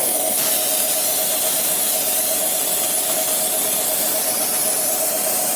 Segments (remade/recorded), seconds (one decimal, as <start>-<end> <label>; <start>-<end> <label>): 0.0-5.6 recorded